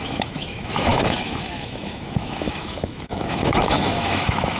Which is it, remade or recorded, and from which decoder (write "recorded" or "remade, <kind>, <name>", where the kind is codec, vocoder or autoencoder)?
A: remade, autoencoder, DAC-VAE